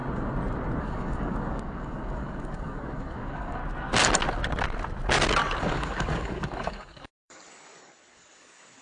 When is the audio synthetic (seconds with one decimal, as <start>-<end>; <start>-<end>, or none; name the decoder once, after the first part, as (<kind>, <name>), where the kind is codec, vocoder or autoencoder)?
0.8-3.6 (codec, DAC); 5.6-8.8